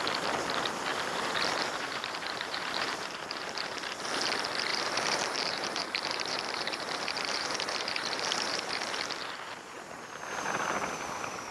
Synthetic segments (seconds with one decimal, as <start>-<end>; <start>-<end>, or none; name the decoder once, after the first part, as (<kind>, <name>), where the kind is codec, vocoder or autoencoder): 0.9-3.8 (vocoder, BigVGAN v2); 4.7-8.7